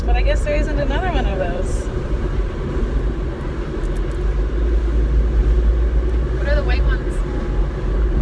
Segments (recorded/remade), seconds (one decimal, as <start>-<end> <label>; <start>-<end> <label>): 0.0-1.3 recorded; 1.3-3.0 remade; 3.0-8.2 recorded

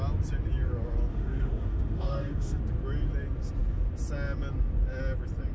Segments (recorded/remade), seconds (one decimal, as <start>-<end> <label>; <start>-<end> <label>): 0.0-1.1 recorded; 1.1-2.6 remade; 2.6-5.5 recorded

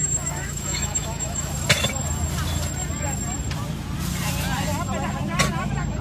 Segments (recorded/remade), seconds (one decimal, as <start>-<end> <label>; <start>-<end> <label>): 0.0-1.5 remade; 1.5-6.0 recorded

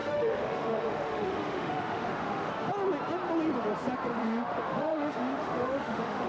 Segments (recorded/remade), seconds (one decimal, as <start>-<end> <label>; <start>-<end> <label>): 0.0-2.5 remade; 2.5-4.1 recorded; 4.1-6.3 remade

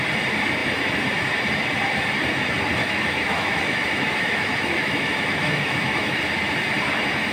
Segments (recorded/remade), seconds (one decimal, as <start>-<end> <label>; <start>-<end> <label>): 0.0-2.8 recorded; 2.8-6.2 remade; 6.2-7.3 recorded